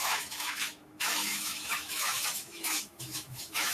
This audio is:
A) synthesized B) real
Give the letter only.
A